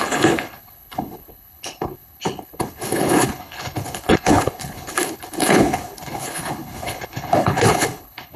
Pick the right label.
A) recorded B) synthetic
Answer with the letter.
B